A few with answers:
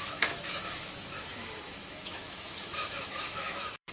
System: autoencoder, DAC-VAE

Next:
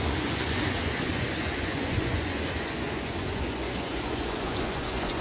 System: vocoder, Vocos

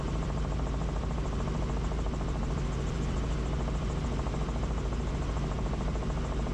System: none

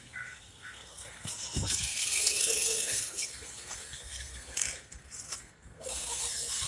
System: codec, SNAC